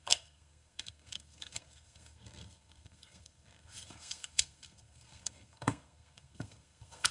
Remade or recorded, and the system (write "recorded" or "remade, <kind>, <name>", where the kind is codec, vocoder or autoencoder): remade, codec, SNAC